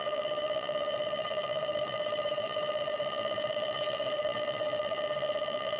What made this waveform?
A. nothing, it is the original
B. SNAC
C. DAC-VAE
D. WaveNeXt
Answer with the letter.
D